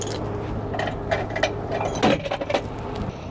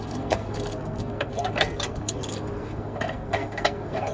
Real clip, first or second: first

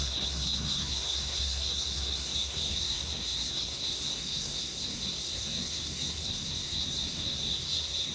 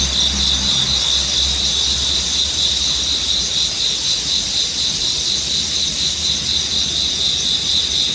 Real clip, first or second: second